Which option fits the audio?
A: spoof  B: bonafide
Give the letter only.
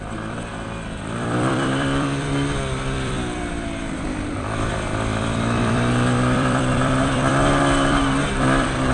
A